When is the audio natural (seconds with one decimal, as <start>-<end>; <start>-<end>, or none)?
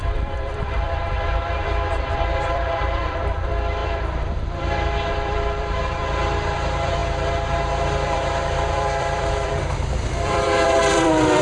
none